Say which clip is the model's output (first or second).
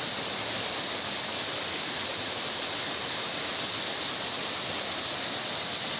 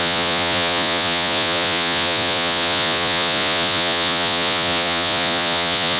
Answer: second